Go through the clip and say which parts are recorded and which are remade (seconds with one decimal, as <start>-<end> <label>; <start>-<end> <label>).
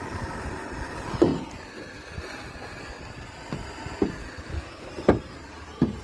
0.0-4.2 recorded; 4.2-4.9 remade; 4.9-6.0 recorded